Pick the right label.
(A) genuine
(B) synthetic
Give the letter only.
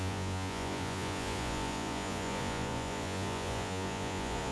B